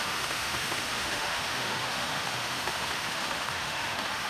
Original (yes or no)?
no